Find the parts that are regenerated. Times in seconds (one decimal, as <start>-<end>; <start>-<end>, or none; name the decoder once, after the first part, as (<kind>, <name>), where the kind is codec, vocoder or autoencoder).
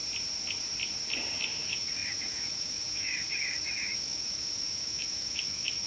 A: 1.5-5.9 (autoencoder, DAC-VAE)